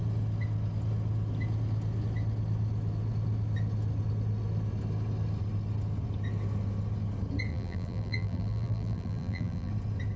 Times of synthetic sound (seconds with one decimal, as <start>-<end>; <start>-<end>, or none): 7.5-9.7

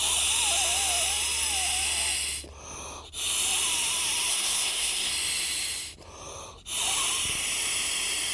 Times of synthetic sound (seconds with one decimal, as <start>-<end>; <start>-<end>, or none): 4.3-5.1

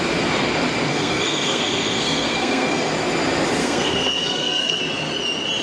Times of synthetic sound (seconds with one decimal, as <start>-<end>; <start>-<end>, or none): 0.9-2.9; 3.6-4.8

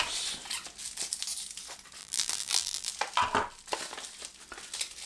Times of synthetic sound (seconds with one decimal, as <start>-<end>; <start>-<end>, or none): 2.0-2.9